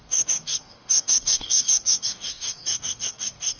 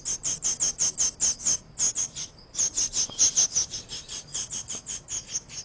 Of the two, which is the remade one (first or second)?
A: first